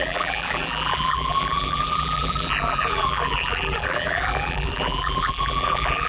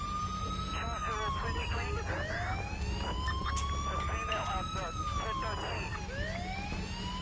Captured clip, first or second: second